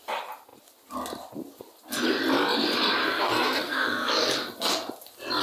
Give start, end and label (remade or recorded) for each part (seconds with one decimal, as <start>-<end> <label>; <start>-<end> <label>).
0.0-3.0 recorded; 3.0-4.1 remade; 4.1-5.4 recorded